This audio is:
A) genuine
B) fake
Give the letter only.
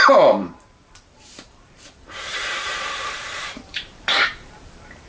B